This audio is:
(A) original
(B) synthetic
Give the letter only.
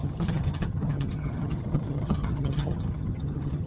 B